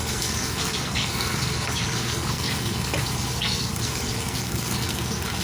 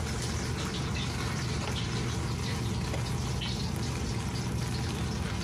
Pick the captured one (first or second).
second